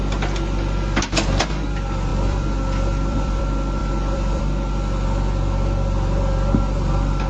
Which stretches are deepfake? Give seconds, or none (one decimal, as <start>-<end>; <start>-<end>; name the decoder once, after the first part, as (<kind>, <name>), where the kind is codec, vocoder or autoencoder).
2.1-3.4 (vocoder, BigVGAN v2); 3.8-4.4